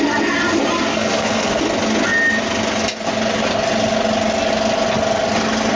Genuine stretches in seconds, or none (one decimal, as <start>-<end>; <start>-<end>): 0.0-0.9; 1.6-5.7